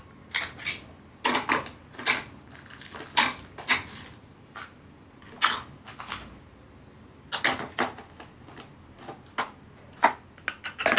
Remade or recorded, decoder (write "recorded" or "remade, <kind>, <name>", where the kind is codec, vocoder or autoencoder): recorded